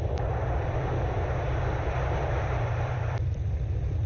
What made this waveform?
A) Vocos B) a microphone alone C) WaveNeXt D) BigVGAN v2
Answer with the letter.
D